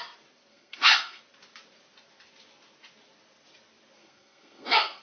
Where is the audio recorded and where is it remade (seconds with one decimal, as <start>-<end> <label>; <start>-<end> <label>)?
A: 0.0-0.5 recorded; 0.5-1.2 remade; 1.2-4.0 recorded; 4.0-5.0 remade